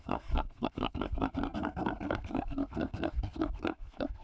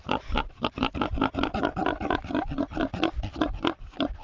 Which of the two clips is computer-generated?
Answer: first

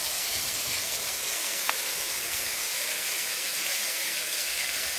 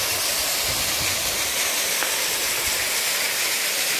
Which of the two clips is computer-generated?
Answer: first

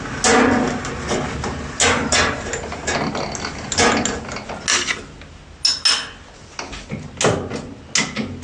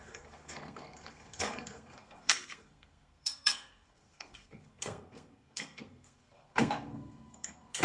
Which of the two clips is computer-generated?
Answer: second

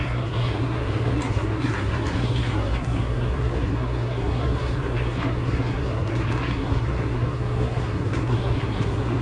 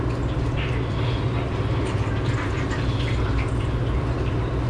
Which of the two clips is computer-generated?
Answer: first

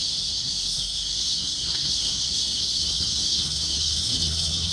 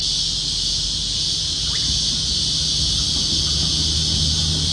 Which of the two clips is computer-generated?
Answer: first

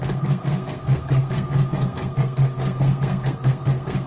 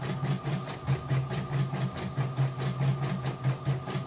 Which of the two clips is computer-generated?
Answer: first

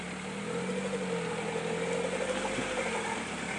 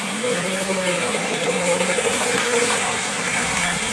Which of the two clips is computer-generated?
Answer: second